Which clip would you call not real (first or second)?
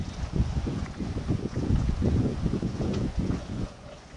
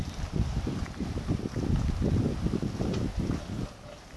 first